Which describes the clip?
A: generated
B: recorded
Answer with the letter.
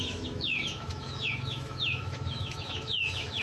A